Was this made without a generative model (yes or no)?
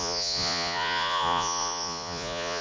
no